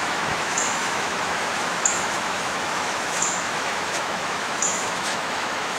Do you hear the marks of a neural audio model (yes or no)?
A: yes